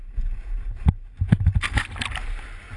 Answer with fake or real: real